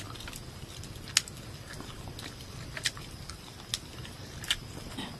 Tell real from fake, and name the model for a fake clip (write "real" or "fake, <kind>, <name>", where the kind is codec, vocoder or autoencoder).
real